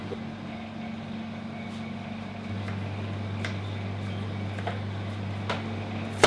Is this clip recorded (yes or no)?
yes